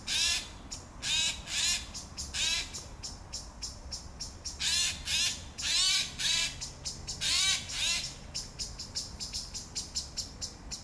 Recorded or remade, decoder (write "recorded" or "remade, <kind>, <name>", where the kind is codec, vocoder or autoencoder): recorded